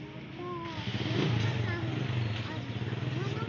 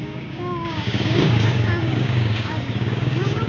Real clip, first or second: first